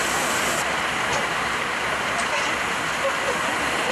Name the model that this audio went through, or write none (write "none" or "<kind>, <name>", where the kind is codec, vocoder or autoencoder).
none